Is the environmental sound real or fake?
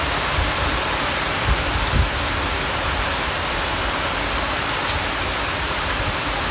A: real